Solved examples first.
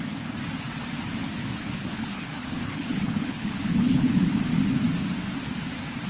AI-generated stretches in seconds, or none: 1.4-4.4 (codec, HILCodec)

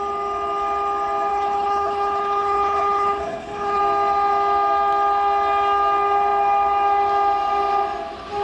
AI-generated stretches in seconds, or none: 1.3-3.8 (codec, HILCodec)